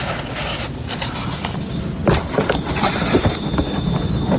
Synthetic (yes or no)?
no